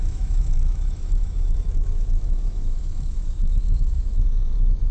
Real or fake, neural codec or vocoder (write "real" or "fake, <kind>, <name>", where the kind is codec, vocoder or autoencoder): fake, autoencoder, DAC-VAE